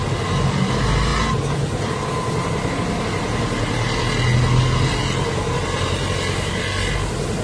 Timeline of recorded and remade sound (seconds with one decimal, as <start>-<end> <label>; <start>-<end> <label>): 0.0-7.4 recorded